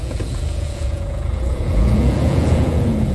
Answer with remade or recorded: remade